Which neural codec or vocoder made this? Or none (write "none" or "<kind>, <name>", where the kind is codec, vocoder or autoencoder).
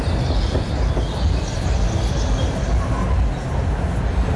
none